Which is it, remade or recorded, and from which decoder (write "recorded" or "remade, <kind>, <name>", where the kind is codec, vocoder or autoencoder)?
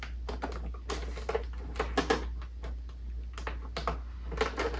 recorded